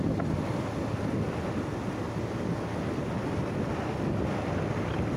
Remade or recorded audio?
recorded